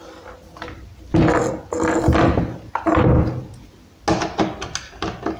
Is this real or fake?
real